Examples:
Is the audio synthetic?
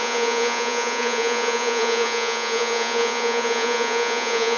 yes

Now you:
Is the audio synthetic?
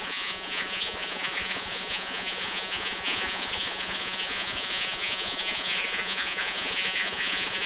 yes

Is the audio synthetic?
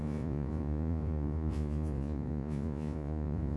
yes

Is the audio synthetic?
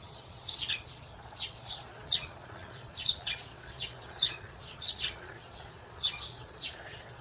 yes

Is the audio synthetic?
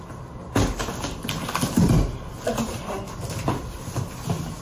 no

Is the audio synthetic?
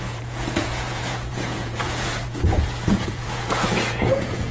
yes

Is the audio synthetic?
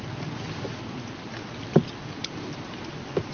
no